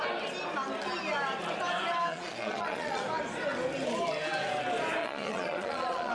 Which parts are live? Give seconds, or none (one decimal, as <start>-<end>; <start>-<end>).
0.0-2.1; 3.0-5.0